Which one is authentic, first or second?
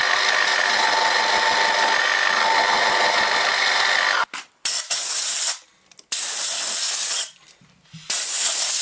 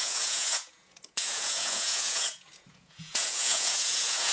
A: first